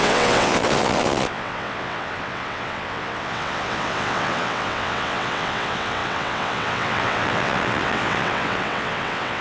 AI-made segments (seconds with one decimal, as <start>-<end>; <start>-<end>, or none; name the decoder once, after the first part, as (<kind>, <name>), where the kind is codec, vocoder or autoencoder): 0.0-9.4 (vocoder, WaveNeXt)